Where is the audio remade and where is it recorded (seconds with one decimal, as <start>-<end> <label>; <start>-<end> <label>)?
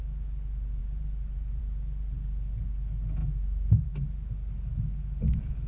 0.0-0.8 recorded; 0.8-1.6 remade; 1.6-5.7 recorded